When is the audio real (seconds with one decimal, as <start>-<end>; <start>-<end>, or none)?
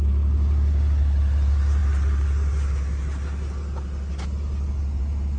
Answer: 0.0-5.4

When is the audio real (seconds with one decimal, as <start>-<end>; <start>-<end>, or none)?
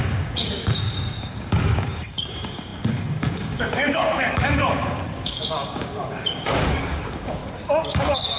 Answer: 7.4-7.9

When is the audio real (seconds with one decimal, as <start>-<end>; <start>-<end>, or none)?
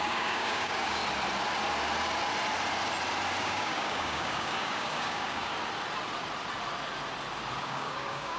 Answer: 1.0-3.4; 5.5-7.6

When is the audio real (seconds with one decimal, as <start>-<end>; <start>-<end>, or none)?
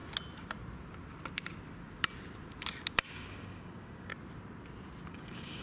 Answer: 0.0-3.1; 4.1-5.1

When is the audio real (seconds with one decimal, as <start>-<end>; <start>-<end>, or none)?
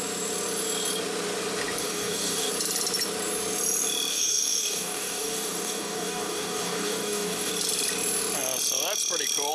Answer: 0.0-1.8; 2.5-4.1; 7.5-9.5